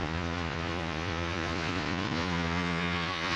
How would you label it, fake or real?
fake